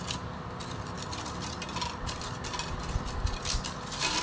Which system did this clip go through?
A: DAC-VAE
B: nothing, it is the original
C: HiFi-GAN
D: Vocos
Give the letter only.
B